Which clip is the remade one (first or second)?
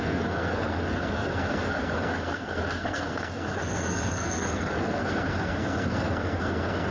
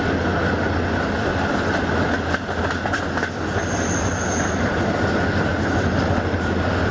first